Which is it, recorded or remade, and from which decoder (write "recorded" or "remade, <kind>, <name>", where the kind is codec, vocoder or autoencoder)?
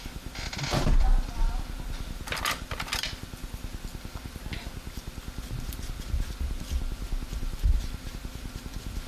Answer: remade, vocoder, BigVGAN v2